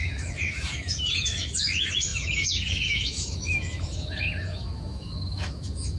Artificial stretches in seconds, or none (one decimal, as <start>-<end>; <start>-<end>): 0.0-6.0